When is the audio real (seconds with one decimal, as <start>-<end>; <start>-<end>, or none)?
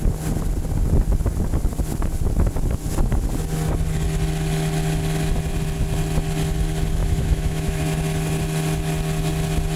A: 0.0-7.0; 7.8-9.8